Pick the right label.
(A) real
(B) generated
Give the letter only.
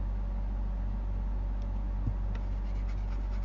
A